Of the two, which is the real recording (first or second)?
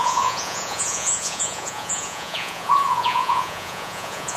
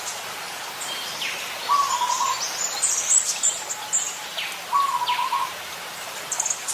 second